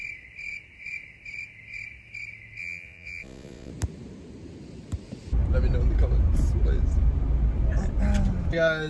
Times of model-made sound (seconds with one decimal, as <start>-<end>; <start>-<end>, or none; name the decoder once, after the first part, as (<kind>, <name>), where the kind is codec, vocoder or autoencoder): 2.6-3.7 (vocoder, Vocos)